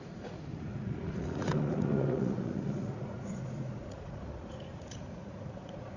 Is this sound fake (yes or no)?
yes